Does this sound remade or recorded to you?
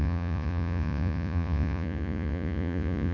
remade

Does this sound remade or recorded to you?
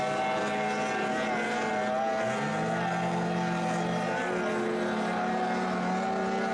recorded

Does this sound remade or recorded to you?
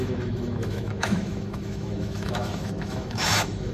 remade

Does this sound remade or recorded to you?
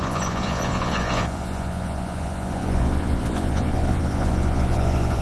remade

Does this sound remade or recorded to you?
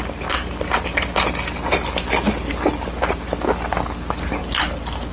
recorded